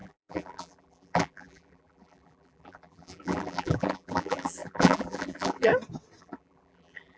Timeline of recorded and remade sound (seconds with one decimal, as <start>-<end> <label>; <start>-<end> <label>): 0.0-5.7 remade; 5.7-6.2 recorded; 6.2-7.2 remade